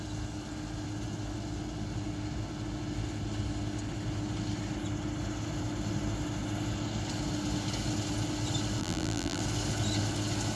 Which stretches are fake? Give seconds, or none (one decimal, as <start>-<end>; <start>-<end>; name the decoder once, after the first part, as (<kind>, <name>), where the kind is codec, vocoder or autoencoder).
8.8-9.4 (vocoder, BigVGAN v2)